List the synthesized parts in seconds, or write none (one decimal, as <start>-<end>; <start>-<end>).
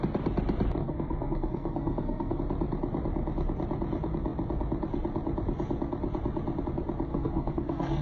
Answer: 0.8-2.4; 7.1-8.0